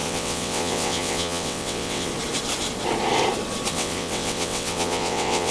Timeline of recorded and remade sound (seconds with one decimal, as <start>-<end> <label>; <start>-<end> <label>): 0.0-2.1 remade; 2.1-3.7 recorded; 3.7-5.5 remade